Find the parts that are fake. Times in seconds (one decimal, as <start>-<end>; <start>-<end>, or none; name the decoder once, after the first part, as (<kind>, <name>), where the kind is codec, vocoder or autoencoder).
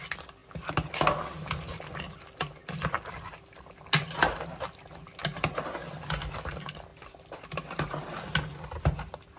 none